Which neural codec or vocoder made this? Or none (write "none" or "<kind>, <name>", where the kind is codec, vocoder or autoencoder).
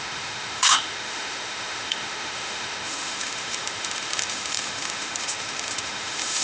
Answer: autoencoder, DAC-VAE